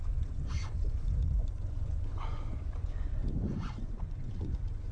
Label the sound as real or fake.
fake